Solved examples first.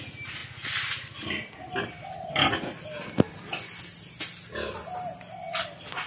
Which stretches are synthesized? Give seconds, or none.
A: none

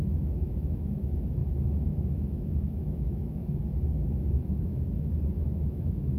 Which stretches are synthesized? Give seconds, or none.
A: 0.0-6.2 (autoencoder, DAC-VAE)

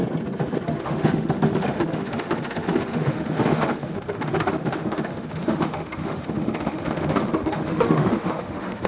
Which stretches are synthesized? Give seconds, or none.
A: 0.8-8.9 (autoencoder, DAC-VAE)

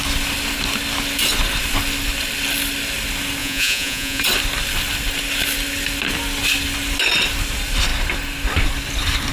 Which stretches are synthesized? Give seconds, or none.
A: 3.4-4.2 (vocoder, Vocos)

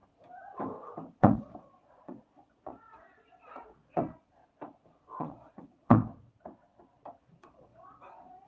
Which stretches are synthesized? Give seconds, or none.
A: 1.2-4.4 (vocoder, Vocos); 5.0-6.0; 7.2-8.5